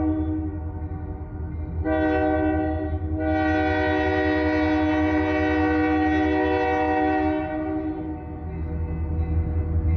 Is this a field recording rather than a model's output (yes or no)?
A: yes